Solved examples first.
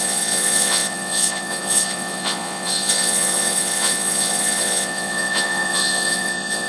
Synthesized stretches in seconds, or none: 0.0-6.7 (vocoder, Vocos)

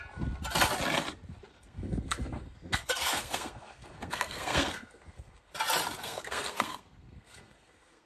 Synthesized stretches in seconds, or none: 1.5-5.5 (codec, SNAC); 6.0-8.1

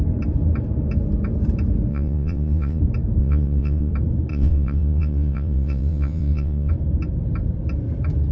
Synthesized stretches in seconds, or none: 1.9-2.8 (vocoder, WaveNeXt); 3.2-3.9; 4.3-6.7

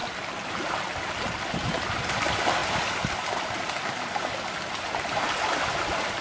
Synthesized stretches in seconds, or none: none